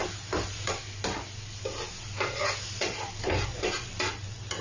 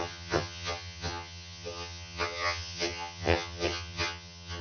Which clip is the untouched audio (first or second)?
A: first